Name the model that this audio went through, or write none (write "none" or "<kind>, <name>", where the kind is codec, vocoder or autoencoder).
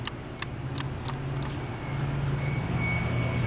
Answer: none